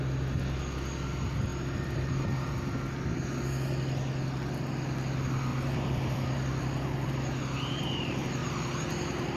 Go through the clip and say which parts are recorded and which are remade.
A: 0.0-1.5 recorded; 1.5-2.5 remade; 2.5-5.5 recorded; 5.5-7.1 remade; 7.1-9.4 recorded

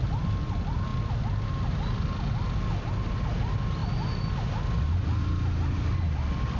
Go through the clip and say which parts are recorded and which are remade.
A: 0.0-6.6 recorded

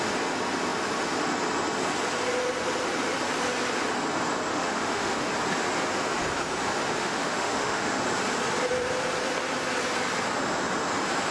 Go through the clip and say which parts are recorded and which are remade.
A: 0.0-4.5 recorded; 4.5-5.3 remade; 5.3-7.0 recorded; 7.0-8.0 remade; 8.0-11.3 recorded

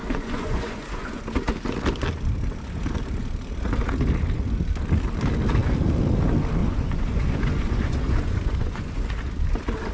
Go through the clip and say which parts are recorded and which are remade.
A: 0.0-1.2 remade; 1.2-6.6 recorded; 6.6-9.0 remade; 9.0-9.9 recorded

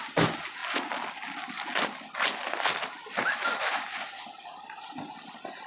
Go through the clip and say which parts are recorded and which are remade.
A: 0.0-5.7 recorded

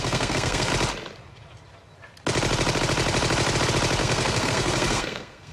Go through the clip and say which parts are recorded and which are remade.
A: 0.0-0.7 remade; 0.7-4.0 recorded; 4.0-5.5 remade